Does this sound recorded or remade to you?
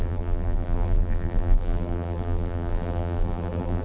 remade